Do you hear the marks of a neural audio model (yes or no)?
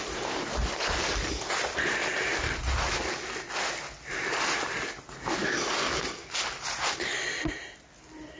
no